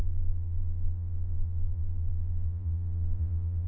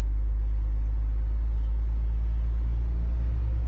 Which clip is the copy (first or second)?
first